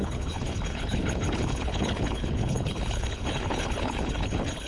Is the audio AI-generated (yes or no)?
yes